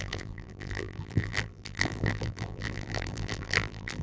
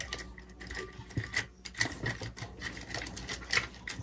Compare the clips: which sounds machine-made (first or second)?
first